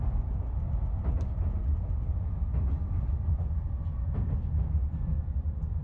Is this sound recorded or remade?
recorded